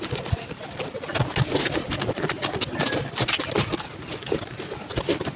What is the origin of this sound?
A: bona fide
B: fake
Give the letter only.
A